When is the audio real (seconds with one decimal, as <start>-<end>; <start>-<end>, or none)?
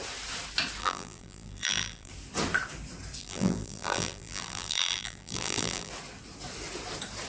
0.0-0.8; 2.1-3.2; 5.9-7.3